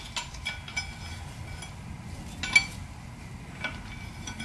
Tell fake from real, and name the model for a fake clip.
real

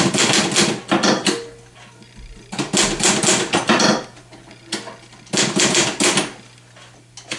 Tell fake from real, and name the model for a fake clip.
real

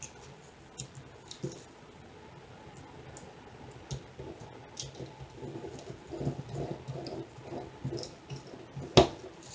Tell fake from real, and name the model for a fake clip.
real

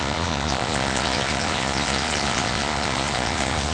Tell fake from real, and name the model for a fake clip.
fake, vocoder, Vocos